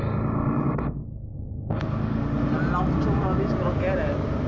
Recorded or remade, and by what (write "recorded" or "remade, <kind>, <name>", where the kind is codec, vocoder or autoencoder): recorded